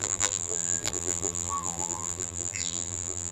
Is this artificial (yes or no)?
yes